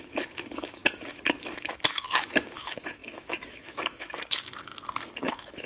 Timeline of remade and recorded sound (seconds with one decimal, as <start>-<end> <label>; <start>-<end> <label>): 0.0-4.7 remade; 4.7-5.3 recorded; 5.3-5.7 remade